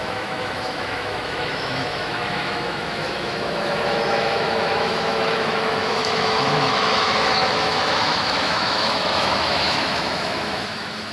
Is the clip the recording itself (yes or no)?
no